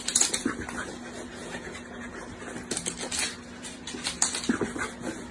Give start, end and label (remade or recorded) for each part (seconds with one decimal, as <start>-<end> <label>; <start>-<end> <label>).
0.0-5.3 recorded